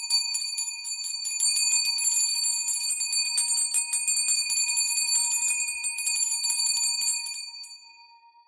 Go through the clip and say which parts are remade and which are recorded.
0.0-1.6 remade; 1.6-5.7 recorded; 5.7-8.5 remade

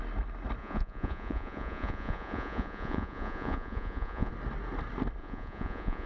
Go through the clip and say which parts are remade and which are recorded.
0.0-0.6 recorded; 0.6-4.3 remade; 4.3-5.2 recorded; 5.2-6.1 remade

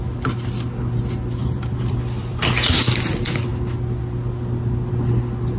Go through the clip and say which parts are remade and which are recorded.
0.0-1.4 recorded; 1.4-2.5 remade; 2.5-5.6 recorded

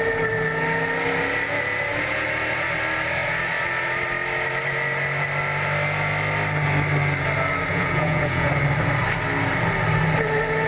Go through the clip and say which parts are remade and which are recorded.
0.0-7.7 recorded; 7.7-8.5 remade; 8.5-10.7 recorded

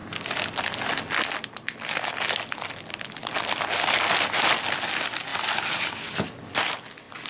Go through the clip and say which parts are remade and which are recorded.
0.0-7.3 recorded